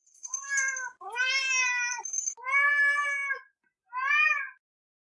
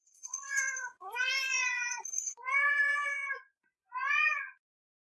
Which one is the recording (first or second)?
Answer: first